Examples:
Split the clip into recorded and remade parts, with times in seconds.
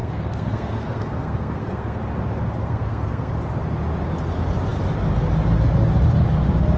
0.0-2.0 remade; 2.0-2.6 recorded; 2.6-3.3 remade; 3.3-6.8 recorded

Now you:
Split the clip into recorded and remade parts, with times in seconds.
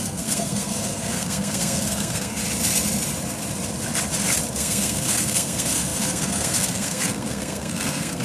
0.0-2.4 remade; 2.4-4.5 recorded; 4.5-8.2 remade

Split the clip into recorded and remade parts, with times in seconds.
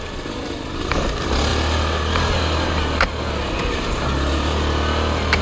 0.0-5.4 recorded